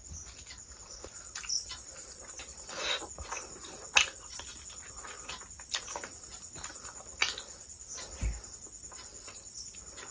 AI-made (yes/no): no